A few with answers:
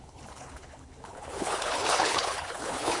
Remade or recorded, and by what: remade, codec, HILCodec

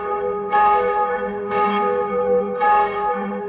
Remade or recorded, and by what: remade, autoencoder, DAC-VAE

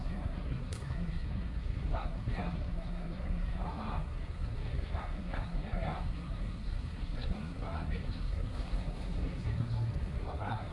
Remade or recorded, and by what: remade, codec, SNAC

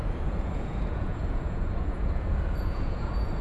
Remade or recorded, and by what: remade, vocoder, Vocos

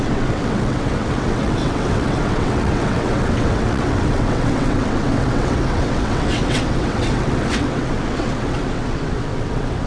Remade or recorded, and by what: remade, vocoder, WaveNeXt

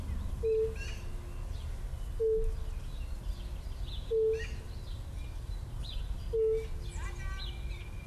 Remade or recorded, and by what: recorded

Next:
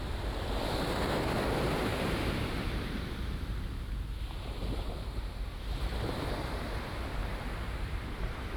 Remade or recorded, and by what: remade, vocoder, BigVGAN v2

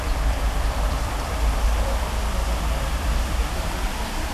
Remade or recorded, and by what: remade, vocoder, BigVGAN v2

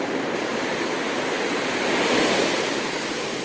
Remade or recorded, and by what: recorded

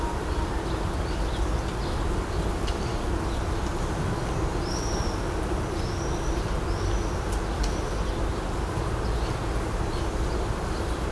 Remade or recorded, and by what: recorded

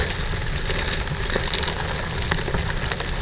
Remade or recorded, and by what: recorded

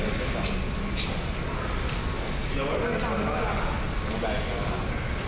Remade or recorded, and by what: recorded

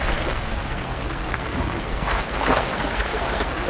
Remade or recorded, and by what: remade, codec, SNAC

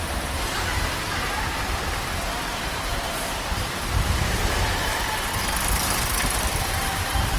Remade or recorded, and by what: remade, vocoder, BigVGAN v2